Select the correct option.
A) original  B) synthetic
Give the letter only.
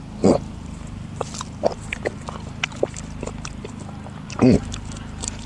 A